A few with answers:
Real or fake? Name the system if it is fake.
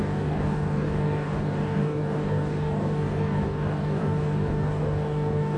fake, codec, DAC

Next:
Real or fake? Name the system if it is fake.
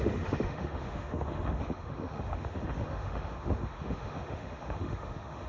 fake, autoencoder, DAC-VAE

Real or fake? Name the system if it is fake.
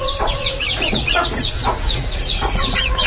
fake, vocoder, Vocos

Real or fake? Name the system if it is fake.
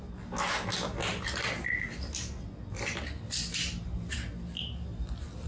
real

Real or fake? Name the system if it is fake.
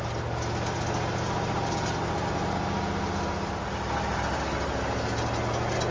real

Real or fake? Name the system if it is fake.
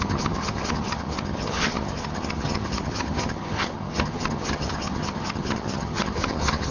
fake, vocoder, HiFi-GAN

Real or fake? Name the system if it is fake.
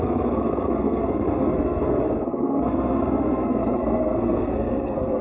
fake, codec, SNAC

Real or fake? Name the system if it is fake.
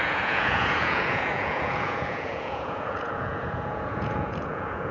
fake, vocoder, Vocos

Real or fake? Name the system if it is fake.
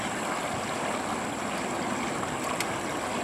real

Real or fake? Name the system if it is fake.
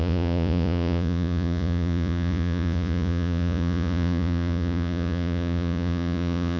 fake, vocoder, Vocos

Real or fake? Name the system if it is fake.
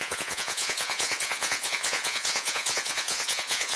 fake, vocoder, Vocos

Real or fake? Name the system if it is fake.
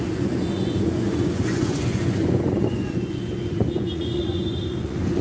fake, vocoder, Vocos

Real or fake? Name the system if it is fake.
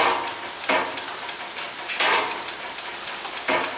fake, vocoder, BigVGAN v2